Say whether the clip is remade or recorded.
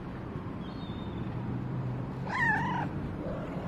remade